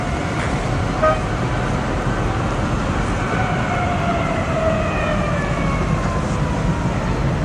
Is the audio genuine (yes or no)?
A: yes